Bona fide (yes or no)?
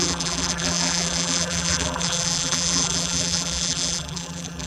no